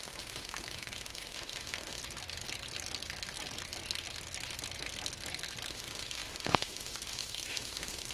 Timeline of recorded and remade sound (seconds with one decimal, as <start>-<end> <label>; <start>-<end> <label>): 0.0-2.0 remade; 2.0-5.7 recorded; 5.7-8.1 remade